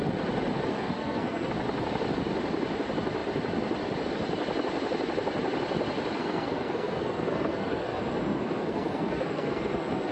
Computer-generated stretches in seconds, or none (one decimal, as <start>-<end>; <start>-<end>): 0.7-1.5; 6.2-10.1